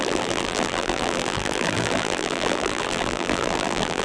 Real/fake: fake